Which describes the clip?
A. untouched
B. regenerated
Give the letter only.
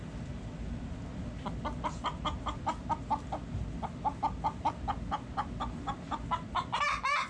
A